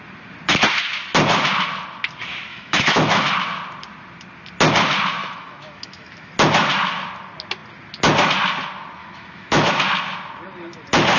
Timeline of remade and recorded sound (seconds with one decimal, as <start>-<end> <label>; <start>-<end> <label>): 0.0-2.5 recorded; 2.5-3.3 remade; 3.3-5.2 recorded; 5.2-6.3 remade; 6.3-9.0 recorded; 9.0-9.7 remade; 9.7-11.2 recorded